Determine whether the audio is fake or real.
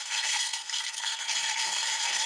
fake